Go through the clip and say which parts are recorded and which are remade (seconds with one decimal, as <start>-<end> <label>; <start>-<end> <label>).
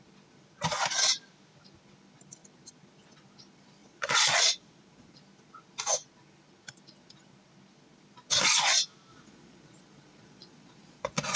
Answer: 0.0-3.8 recorded; 3.8-5.2 remade; 5.2-9.1 recorded; 9.1-11.4 remade